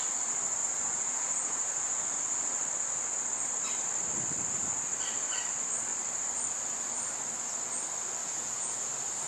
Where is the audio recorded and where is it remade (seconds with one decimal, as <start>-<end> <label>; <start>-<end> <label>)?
0.0-0.6 recorded; 0.6-2.2 remade; 2.2-8.2 recorded; 8.2-8.9 remade; 8.9-9.3 recorded